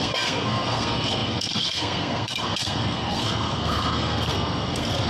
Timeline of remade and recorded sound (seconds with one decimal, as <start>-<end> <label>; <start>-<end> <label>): 0.0-5.1 remade